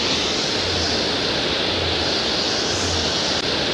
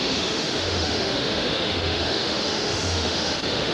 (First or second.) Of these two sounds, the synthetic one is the second